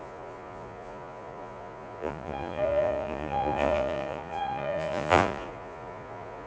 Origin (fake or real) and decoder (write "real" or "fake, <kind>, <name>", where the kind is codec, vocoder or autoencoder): fake, vocoder, Vocos